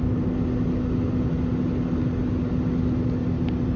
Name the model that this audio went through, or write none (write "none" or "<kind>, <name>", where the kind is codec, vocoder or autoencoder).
none